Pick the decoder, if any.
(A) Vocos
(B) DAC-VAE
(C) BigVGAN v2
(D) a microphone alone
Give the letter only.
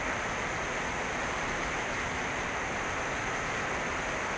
D